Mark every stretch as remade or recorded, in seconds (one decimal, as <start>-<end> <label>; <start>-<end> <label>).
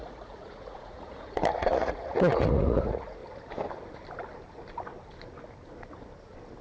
0.0-3.2 remade; 3.2-6.6 recorded